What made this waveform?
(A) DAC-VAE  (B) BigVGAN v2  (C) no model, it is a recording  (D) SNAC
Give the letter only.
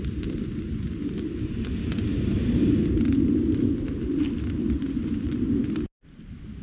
C